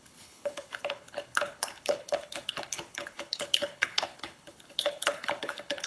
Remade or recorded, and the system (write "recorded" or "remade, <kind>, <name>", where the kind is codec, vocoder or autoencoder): remade, codec, HILCodec